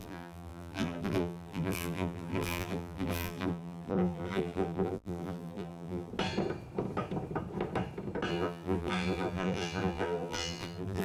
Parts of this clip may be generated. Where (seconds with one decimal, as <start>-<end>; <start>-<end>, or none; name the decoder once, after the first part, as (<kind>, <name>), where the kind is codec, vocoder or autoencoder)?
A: 0.0-6.1 (vocoder, BigVGAN v2); 8.3-11.0